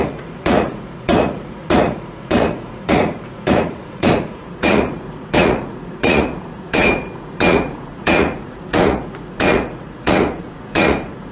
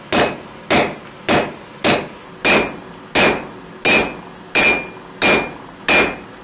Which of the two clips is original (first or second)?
second